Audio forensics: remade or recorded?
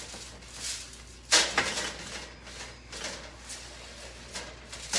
recorded